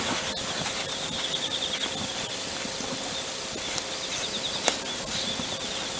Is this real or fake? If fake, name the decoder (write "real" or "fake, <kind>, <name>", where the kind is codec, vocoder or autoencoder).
real